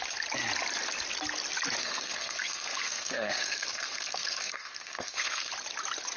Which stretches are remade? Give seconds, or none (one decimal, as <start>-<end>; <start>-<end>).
1.8-5.5